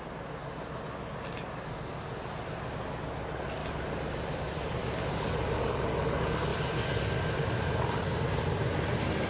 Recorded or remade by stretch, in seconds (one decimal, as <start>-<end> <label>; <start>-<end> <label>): 0.0-3.6 recorded; 3.6-5.0 remade; 5.0-9.3 recorded